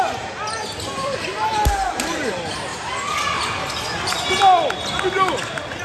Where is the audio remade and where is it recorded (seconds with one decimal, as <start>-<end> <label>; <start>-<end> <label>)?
0.0-5.8 recorded